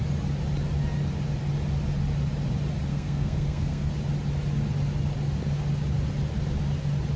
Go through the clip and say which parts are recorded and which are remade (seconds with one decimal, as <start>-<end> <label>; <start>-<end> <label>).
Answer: 0.0-2.9 recorded; 2.9-3.9 remade; 3.9-7.2 recorded